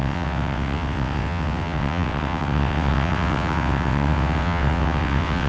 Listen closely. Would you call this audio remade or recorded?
remade